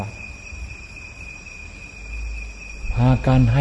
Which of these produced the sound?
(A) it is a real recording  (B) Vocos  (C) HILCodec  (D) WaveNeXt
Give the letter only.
A